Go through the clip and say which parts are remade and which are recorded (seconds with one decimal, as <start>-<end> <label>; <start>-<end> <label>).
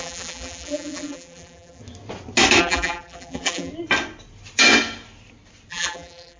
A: 0.0-1.8 remade; 1.8-2.6 recorded; 2.6-3.7 remade; 3.7-5.7 recorded; 5.7-6.4 remade